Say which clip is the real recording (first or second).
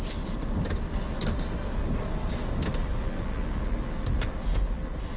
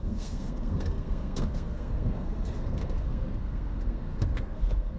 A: first